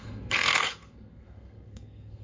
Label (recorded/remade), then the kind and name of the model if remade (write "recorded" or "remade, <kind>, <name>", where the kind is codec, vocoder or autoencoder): remade, codec, SNAC